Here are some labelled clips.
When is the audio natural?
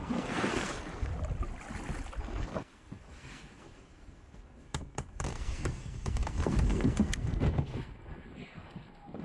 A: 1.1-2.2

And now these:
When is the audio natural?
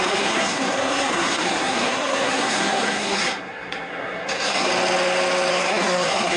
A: 4.7-5.5